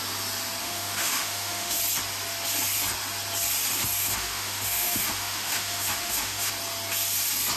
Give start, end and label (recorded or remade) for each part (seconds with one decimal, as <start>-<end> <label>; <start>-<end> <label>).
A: 0.0-0.6 recorded; 0.6-1.8 remade; 1.8-4.0 recorded; 4.0-6.5 remade; 6.5-7.6 recorded